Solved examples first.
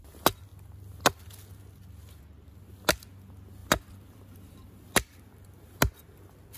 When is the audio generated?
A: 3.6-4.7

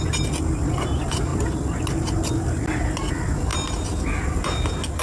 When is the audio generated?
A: none

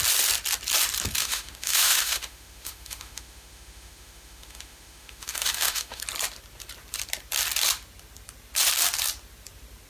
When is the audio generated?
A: 1.2-6.0